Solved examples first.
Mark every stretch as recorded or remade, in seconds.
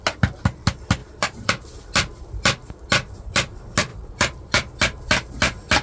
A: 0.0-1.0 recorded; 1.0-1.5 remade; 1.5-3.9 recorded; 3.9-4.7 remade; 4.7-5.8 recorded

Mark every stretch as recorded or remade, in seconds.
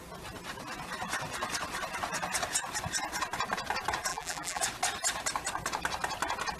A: 0.0-4.1 recorded; 4.1-4.6 remade; 4.6-6.6 recorded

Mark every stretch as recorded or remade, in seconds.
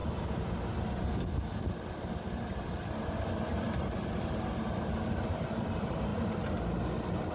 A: 0.0-4.4 remade; 4.4-7.3 recorded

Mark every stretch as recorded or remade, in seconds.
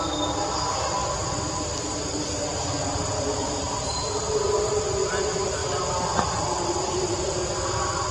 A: 0.0-1.0 recorded; 1.0-2.4 remade; 2.4-3.4 recorded; 3.4-4.1 remade; 4.1-5.6 recorded; 5.6-7.4 remade; 7.4-8.1 recorded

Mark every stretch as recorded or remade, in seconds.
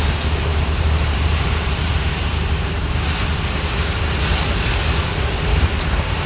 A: 0.0-0.5 recorded; 0.5-2.5 remade; 2.5-5.1 recorded; 5.1-6.3 remade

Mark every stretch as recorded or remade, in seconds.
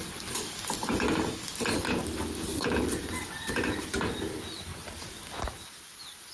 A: 0.0-6.3 recorded